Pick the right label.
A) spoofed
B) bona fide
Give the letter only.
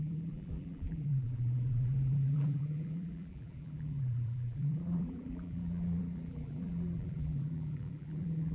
A